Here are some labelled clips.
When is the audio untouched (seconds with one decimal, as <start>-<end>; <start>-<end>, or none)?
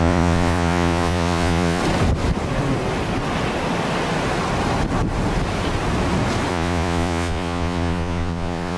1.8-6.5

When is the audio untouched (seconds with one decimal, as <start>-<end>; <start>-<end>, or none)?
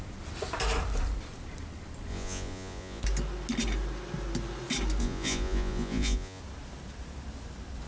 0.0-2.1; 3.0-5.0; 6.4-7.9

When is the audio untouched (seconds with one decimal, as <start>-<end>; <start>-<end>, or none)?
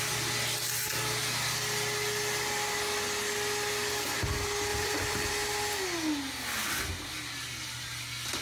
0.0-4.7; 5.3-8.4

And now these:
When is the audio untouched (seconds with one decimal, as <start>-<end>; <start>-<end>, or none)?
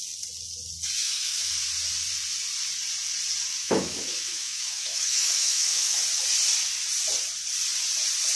0.0-1.0; 1.5-3.6; 6.0-8.4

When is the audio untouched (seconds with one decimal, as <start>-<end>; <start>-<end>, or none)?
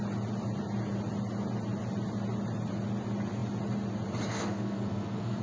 0.0-4.3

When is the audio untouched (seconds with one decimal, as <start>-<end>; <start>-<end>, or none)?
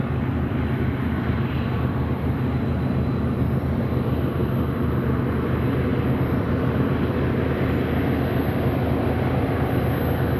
0.0-10.4